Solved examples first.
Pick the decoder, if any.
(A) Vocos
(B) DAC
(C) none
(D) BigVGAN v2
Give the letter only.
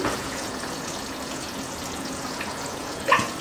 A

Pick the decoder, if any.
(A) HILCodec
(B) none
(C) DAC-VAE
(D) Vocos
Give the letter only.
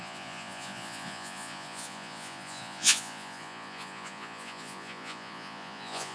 D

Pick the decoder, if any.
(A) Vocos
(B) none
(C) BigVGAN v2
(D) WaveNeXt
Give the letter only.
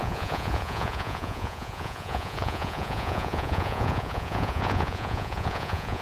A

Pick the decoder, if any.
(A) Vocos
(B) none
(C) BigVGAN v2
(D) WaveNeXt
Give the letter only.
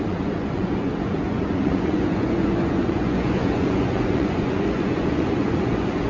A